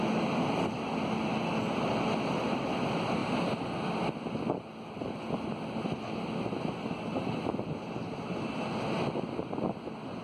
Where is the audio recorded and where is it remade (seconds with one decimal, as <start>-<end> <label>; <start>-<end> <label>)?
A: 0.0-10.2 recorded